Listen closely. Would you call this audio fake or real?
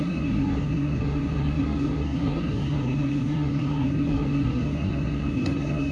fake